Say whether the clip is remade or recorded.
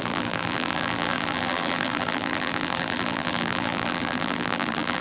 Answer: remade